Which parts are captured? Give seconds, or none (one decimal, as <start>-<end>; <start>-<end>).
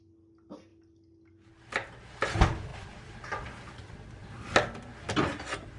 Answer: 0.0-5.8